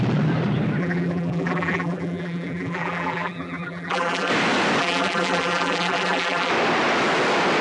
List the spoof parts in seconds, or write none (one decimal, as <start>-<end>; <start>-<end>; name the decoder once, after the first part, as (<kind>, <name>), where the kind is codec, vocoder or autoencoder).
0.8-4.3 (vocoder, BigVGAN v2); 4.8-6.5